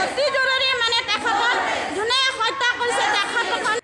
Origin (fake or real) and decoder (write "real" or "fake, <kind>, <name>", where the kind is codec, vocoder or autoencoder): real